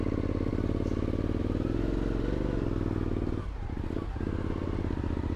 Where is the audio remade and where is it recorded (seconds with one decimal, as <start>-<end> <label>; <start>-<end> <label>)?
0.0-5.4 recorded